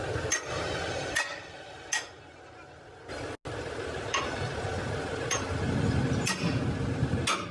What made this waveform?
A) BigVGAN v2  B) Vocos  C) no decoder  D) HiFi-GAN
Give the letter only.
C